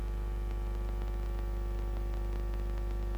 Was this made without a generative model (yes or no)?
yes